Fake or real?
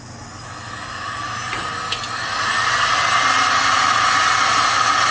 real